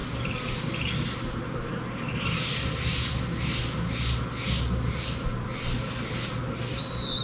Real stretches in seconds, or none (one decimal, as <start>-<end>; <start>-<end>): 0.0-7.2

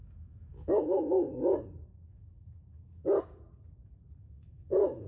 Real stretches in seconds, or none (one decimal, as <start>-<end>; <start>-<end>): 0.8-2.1; 3.2-4.2

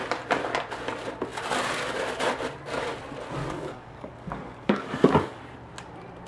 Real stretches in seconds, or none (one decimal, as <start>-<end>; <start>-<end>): 0.0-3.4; 5.4-6.3

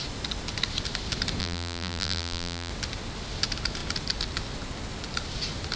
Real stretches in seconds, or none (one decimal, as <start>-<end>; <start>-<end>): 0.0-1.4; 2.7-5.8

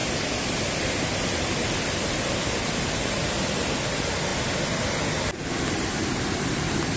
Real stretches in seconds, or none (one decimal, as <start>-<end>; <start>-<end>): 0.0-2.4; 4.3-6.2

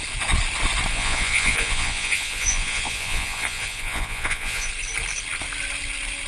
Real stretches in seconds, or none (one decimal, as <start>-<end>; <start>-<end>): 0.0-0.9; 4.7-6.3

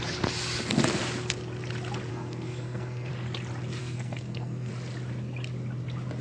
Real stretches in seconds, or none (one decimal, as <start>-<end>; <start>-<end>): 0.0-2.1; 3.1-3.8; 4.7-6.2

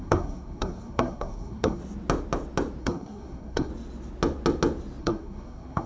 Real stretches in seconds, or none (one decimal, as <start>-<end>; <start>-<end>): 1.8-2.8; 3.7-5.0